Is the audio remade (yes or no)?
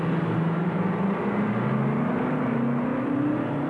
no